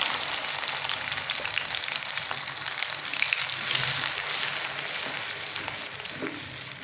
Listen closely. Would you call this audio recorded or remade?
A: recorded